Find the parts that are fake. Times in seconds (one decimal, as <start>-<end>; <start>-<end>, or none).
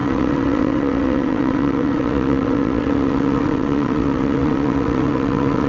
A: 0.0-5.7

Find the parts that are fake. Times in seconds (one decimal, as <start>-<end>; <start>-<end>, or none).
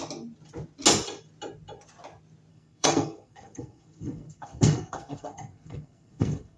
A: 2.5-6.6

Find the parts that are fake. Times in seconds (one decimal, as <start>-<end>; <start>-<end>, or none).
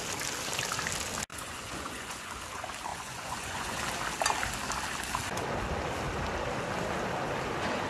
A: 1.3-2.3; 2.9-3.8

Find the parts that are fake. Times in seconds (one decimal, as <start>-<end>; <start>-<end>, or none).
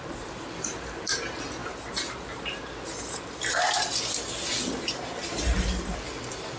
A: none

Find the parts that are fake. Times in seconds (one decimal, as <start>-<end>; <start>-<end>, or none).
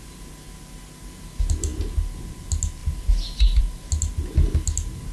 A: none